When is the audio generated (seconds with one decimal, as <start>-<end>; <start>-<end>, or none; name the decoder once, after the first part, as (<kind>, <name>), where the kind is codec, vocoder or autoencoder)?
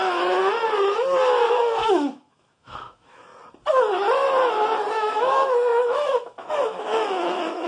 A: 0.0-0.4 (autoencoder, DAC-VAE); 1.5-3.3; 4.9-7.7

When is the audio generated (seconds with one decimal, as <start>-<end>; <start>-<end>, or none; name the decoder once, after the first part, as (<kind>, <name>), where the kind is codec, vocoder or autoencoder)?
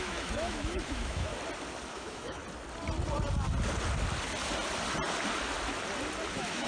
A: 0.0-1.3 (autoencoder, DAC-VAE); 1.9-2.4; 6.3-6.7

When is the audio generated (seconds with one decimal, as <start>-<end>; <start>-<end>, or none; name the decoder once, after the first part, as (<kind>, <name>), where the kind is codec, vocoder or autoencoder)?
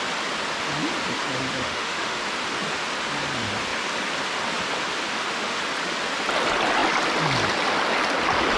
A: 1.6-2.2 (autoencoder, DAC-VAE); 5.1-5.6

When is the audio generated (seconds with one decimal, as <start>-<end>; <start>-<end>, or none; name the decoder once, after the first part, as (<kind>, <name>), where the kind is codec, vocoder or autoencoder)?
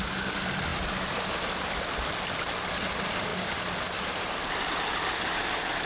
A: none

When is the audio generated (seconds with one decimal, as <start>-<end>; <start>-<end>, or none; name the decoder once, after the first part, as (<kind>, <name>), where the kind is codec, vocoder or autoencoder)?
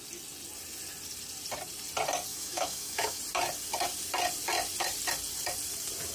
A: 2.3-3.2 (autoencoder, DAC-VAE)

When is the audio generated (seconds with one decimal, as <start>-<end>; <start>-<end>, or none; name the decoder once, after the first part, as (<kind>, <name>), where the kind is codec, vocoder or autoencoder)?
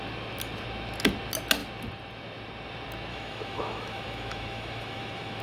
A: 3.1-5.4 (autoencoder, DAC-VAE)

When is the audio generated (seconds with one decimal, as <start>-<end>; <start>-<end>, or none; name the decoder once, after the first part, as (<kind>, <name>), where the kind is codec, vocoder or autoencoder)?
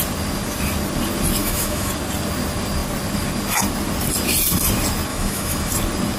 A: 1.4-1.9 (autoencoder, DAC-VAE); 5.1-5.7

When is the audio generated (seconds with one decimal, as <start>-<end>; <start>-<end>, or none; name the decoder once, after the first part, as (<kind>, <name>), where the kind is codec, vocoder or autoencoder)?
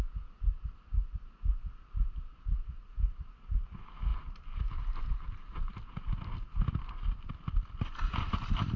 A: none